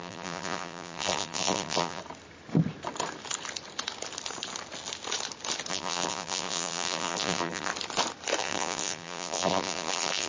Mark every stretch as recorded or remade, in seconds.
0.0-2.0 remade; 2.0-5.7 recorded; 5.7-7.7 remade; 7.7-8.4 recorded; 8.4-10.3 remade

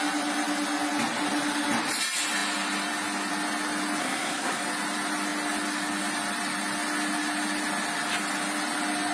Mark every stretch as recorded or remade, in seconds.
0.0-4.0 recorded; 4.0-4.6 remade; 4.6-9.1 recorded

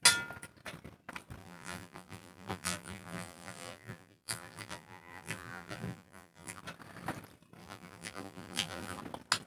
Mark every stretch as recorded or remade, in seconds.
0.0-1.4 recorded; 1.4-6.6 remade; 6.6-7.6 recorded; 7.6-9.0 remade; 9.0-9.5 recorded

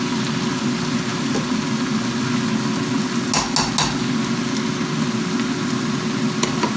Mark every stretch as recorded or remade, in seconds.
0.0-6.8 recorded